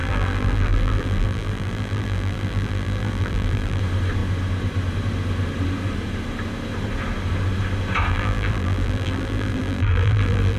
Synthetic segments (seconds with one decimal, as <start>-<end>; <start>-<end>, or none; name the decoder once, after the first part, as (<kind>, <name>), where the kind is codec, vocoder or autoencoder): 0.0-3.8 (vocoder, BigVGAN v2); 8.1-10.6